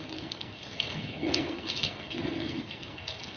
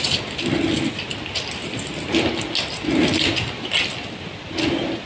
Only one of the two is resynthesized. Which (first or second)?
first